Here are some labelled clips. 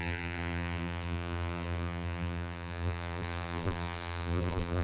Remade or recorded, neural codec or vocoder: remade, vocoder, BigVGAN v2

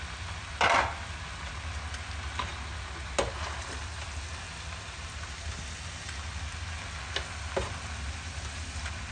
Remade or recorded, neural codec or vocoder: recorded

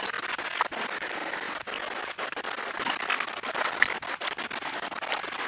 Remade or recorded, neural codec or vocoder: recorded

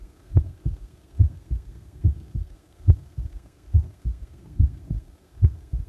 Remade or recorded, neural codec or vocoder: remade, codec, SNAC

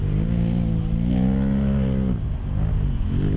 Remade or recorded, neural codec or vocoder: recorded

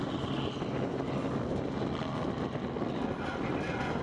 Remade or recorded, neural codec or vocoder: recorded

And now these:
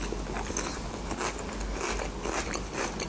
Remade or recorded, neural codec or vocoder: recorded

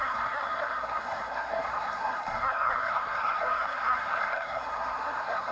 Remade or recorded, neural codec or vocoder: remade, codec, SNAC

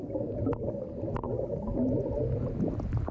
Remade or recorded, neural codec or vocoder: recorded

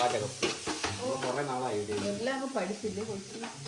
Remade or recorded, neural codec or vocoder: recorded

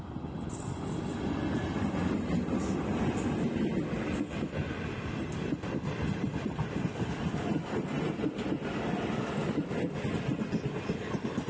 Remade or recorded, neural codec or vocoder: recorded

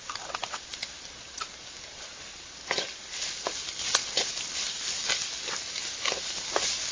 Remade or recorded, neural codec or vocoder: recorded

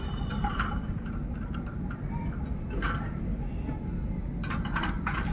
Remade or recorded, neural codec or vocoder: recorded